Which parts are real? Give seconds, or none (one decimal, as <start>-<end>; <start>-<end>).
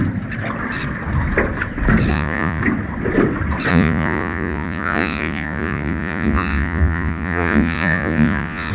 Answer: 0.0-2.1; 2.6-3.7